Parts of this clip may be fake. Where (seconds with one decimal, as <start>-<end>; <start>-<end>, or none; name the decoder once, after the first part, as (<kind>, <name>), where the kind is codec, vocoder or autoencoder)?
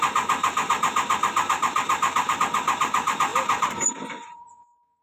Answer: 0.4-2.4 (vocoder, BigVGAN v2); 3.3-4.5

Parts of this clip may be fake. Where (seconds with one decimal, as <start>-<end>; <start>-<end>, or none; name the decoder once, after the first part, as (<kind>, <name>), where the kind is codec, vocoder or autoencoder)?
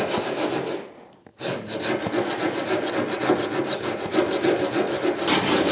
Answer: none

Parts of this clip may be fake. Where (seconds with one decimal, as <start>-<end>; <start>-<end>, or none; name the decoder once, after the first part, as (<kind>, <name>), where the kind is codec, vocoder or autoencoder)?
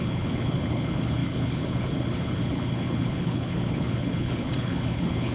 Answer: 0.0-5.3 (codec, HILCodec)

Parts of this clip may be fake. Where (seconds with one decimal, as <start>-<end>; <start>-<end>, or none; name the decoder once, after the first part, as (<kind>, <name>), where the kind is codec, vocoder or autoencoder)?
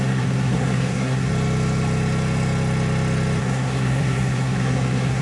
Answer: 0.0-1.3 (codec, SNAC); 3.4-5.2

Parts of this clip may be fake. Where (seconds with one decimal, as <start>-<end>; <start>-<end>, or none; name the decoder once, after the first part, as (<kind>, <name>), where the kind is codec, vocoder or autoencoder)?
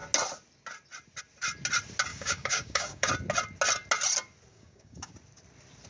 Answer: 2.1-3.1 (codec, DAC); 4.5-5.1